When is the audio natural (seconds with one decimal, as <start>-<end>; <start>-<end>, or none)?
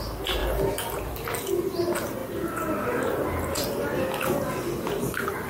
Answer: 0.0-5.5